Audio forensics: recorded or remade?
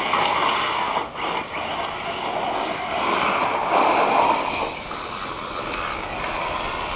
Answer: recorded